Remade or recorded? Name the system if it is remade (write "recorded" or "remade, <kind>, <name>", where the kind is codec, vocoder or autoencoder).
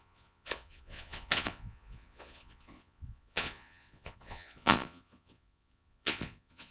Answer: remade, vocoder, Vocos